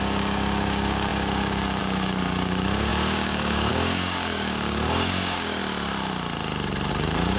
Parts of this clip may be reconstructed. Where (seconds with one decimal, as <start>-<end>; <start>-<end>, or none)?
0.0-5.6; 6.9-7.4